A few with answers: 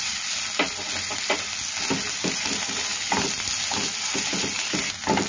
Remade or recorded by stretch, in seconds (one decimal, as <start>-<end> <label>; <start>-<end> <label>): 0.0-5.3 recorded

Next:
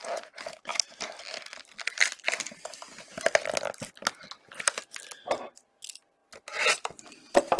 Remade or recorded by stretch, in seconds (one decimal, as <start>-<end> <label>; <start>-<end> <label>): 0.0-4.0 recorded; 4.0-5.0 remade; 5.0-6.2 recorded; 6.2-7.6 remade

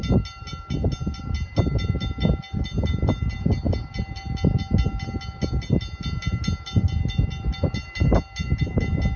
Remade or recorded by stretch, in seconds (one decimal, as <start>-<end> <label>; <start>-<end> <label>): 0.0-9.2 recorded

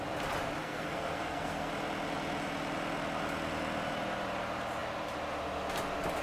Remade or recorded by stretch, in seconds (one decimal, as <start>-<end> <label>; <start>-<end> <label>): 0.0-0.6 recorded; 0.6-1.7 remade; 1.7-6.2 recorded

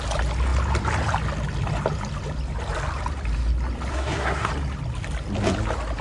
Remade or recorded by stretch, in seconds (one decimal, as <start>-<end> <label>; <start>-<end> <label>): 0.0-3.9 recorded; 3.9-4.5 remade; 4.5-6.0 recorded